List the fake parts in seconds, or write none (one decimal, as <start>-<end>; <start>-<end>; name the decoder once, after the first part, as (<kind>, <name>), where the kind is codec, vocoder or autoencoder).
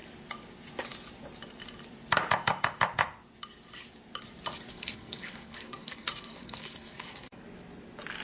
4.7-7.4 (codec, SNAC)